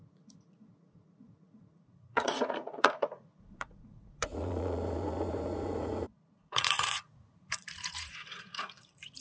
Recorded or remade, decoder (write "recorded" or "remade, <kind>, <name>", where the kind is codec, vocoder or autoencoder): remade, vocoder, Vocos